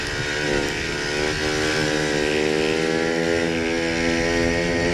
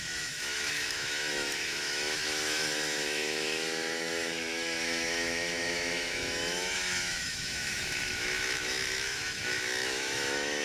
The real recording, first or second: first